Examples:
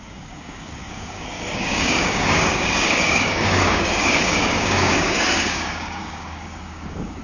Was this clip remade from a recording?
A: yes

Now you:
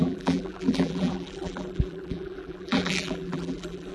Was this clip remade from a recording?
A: yes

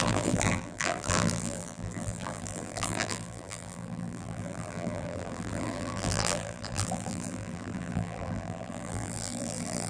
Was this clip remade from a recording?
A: yes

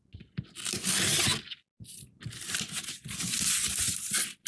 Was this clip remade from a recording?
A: no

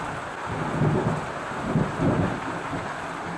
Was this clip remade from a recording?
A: no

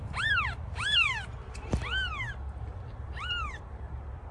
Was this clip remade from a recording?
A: yes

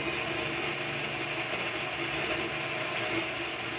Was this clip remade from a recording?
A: no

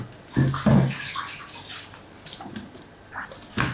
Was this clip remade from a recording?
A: no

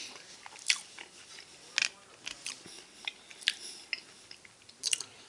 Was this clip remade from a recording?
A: no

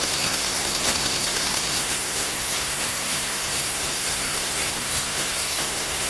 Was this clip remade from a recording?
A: yes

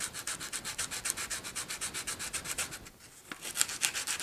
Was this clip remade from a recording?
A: no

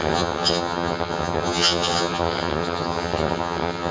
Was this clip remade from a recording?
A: yes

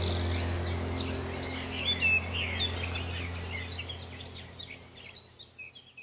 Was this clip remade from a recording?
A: no